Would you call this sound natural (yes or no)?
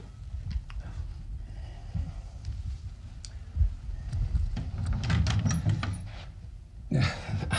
yes